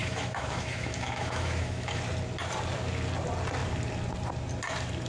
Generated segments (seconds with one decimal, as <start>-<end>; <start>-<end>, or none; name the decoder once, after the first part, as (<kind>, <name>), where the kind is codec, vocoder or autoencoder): 0.0-2.0 (autoencoder, DAC-VAE)